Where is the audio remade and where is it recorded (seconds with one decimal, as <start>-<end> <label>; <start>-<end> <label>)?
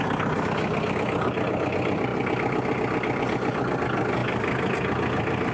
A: 0.0-5.5 recorded